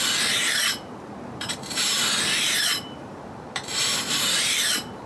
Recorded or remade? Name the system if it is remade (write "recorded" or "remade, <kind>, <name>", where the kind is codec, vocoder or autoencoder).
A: remade, vocoder, BigVGAN v2